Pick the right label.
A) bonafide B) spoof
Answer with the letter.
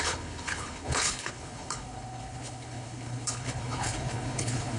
B